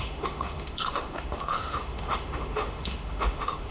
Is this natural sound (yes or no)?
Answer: no